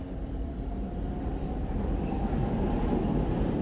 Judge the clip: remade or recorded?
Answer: recorded